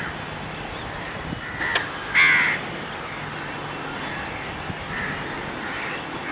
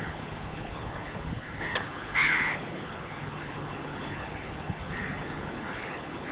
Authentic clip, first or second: first